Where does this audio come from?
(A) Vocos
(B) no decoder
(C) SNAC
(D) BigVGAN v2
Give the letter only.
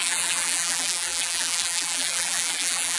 D